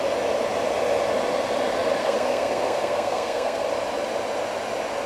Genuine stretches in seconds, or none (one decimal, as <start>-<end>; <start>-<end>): 0.0-2.0; 3.7-5.1